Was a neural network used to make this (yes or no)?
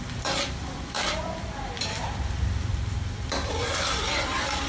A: yes